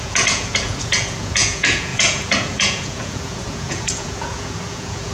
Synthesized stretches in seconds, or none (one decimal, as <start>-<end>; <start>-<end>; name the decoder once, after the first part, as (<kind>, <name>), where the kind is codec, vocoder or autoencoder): 0.0-5.1 (vocoder, Vocos)